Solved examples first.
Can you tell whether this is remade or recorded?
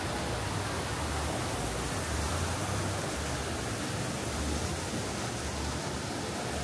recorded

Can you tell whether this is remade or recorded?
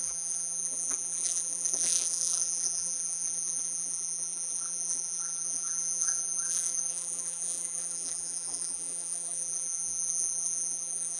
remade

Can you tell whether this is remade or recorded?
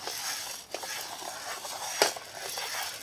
recorded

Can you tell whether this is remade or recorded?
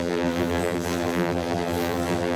remade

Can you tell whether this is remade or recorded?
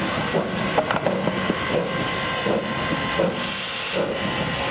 recorded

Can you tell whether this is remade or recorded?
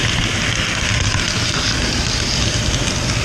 recorded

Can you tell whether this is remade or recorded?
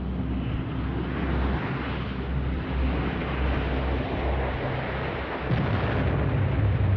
recorded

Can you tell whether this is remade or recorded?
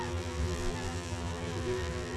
remade